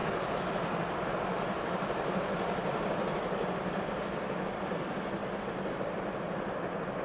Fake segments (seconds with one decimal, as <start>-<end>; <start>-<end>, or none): 0.0-5.2; 5.7-7.0